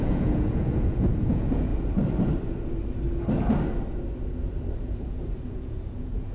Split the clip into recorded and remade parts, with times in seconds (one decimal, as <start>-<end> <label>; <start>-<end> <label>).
0.0-1.7 remade; 1.7-5.5 recorded; 5.5-6.3 remade